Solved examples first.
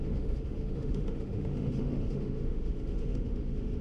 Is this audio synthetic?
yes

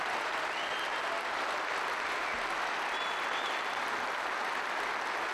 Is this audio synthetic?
no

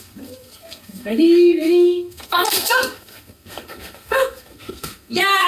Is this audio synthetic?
yes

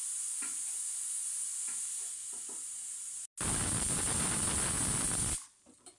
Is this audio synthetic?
no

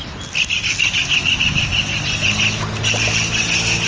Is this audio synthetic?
no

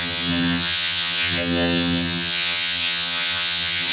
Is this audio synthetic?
yes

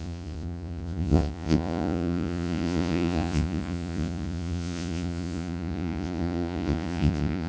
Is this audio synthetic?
yes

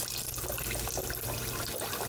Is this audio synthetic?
no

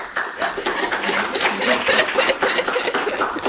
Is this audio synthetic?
no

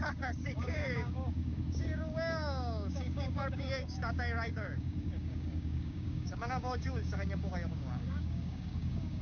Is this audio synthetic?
yes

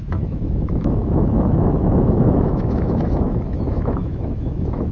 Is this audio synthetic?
yes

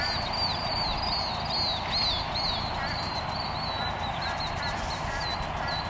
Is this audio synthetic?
no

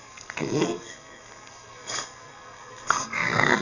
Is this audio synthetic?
yes